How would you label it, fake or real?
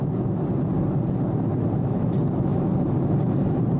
real